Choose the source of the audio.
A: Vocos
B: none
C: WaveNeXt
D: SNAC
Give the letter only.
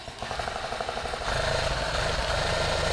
B